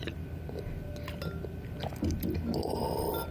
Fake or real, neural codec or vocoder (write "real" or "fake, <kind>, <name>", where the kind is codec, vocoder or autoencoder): real